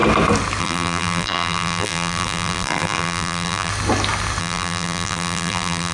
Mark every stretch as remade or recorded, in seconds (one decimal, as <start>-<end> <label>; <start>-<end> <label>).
0.0-0.6 recorded; 0.6-3.7 remade; 3.7-4.4 recorded; 4.4-5.9 remade